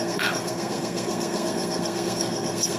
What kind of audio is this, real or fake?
fake